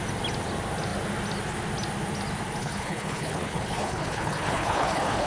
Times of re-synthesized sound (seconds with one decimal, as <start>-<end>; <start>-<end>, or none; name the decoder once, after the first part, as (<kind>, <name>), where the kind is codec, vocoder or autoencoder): 2.6-5.3 (codec, HILCodec)